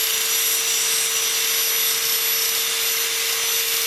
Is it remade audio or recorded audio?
recorded